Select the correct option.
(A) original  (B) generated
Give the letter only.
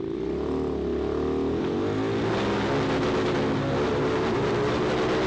A